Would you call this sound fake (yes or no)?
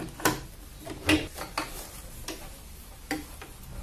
no